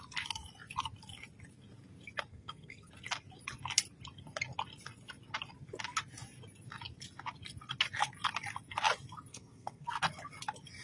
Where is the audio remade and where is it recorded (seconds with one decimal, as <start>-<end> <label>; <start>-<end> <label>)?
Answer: 0.0-2.3 recorded; 2.3-2.9 remade; 2.9-9.3 recorded; 9.3-9.9 remade; 9.9-10.8 recorded